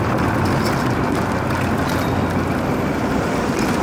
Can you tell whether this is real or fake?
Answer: real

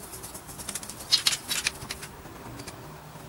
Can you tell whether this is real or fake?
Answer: real